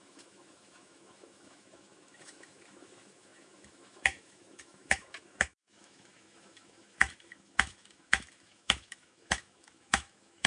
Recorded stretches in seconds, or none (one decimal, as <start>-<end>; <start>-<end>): none